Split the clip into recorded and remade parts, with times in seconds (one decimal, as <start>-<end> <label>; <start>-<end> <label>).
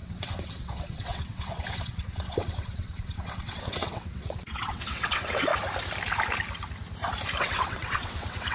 0.0-5.5 remade; 5.5-7.4 recorded; 7.4-8.5 remade